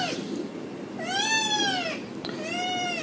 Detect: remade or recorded remade